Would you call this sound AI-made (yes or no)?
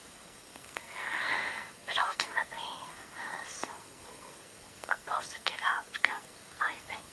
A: yes